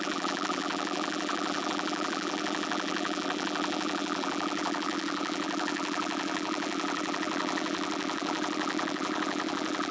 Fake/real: fake